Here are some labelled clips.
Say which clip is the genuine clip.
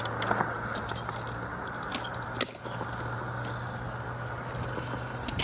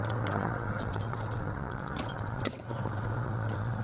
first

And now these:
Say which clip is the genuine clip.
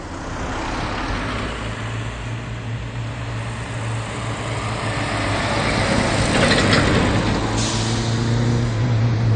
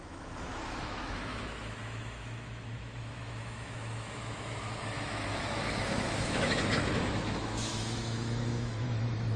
first